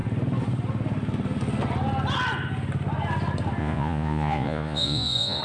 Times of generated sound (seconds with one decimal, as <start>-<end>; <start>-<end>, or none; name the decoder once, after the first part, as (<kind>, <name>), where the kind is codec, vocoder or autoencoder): 3.6-5.4 (vocoder, Vocos)